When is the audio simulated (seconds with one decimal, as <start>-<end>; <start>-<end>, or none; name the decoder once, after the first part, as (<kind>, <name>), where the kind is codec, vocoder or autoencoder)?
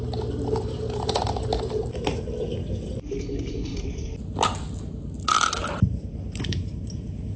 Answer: 0.6-1.2 (vocoder, BigVGAN v2); 1.9-3.7; 6.4-7.4